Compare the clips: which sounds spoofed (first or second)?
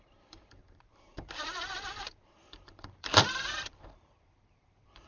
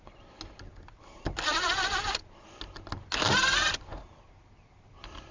first